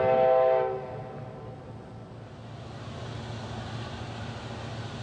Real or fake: real